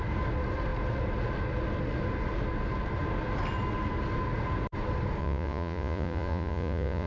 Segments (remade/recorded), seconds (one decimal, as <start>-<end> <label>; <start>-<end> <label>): 0.0-5.2 recorded; 5.2-7.1 remade